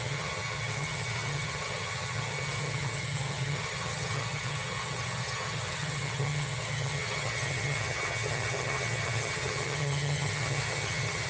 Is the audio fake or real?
fake